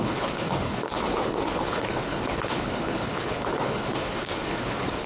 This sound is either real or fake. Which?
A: fake